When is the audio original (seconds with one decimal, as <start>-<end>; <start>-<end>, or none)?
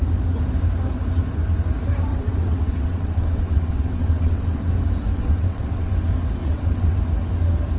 0.0-2.1; 4.6-5.1; 5.9-6.4; 7.0-7.8